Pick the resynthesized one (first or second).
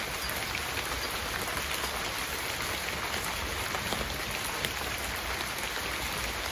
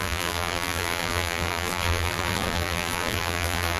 second